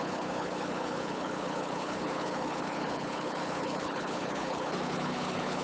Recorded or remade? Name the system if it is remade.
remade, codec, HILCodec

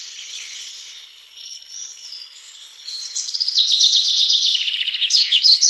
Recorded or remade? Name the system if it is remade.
remade, codec, HILCodec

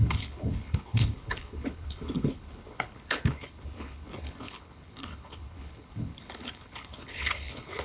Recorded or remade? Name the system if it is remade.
remade, codec, HILCodec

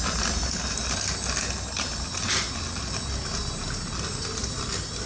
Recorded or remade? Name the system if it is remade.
recorded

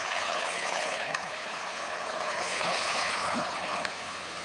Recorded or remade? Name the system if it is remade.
remade, codec, HILCodec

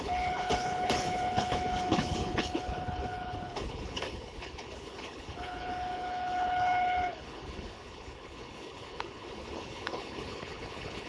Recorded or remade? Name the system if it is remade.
remade, codec, HILCodec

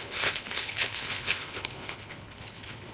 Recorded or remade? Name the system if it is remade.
remade, codec, HILCodec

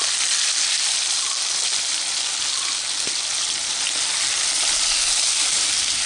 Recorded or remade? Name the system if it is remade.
recorded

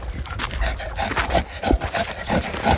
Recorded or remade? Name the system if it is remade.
recorded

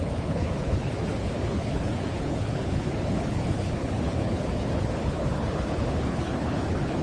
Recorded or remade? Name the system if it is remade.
remade, codec, HILCodec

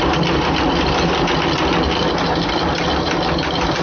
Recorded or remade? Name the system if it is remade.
recorded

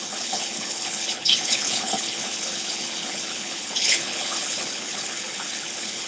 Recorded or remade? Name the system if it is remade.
remade, codec, HILCodec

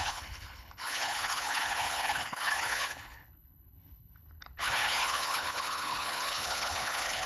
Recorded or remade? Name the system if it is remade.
remade, codec, HILCodec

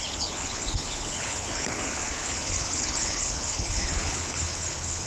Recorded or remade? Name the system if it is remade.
remade, codec, HILCodec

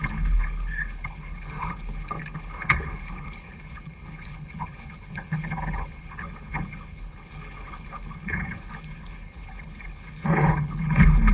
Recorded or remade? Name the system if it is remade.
remade, codec, HILCodec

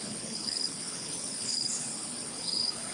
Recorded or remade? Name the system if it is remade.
remade, codec, HILCodec